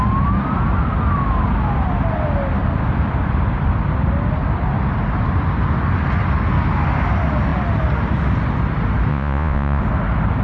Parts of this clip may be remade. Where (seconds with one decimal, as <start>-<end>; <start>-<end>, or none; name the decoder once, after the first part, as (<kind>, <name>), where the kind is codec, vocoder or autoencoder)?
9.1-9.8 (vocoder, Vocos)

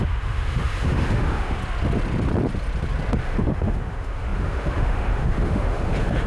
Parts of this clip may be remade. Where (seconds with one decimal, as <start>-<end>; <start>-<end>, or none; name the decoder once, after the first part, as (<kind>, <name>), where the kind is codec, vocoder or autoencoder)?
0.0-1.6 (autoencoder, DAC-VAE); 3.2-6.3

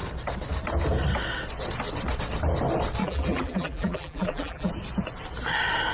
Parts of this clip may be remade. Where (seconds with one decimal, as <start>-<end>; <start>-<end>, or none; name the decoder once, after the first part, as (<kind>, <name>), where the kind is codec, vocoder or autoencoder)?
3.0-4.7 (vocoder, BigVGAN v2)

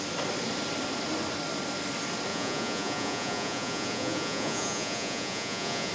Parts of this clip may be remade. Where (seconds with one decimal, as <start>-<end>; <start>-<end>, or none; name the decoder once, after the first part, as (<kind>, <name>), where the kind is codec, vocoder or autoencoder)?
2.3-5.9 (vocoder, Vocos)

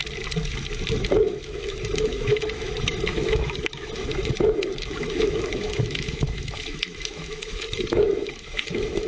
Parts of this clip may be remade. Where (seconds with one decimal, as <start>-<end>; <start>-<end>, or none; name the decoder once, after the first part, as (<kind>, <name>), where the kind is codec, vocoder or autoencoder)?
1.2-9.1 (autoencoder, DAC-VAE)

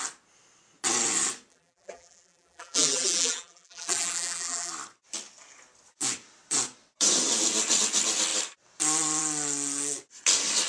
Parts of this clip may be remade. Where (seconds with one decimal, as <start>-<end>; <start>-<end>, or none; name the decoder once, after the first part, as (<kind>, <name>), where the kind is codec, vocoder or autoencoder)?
1.5-4.7 (vocoder, BigVGAN v2)

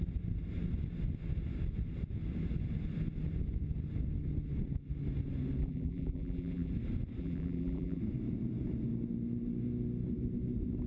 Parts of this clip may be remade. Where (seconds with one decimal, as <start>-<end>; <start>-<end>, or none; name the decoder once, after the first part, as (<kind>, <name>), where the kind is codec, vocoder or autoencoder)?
5.6-6.7 (vocoder, BigVGAN v2); 7.2-8.0

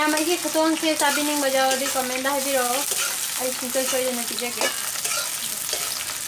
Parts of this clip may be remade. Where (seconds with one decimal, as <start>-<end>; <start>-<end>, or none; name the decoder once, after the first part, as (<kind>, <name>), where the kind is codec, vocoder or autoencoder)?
none